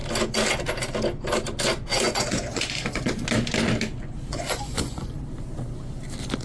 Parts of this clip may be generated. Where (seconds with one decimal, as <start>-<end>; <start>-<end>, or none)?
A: 1.9-3.1; 4.3-5.1